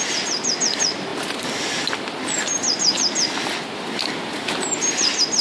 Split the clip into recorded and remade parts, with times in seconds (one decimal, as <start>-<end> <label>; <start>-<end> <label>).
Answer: 0.0-5.4 recorded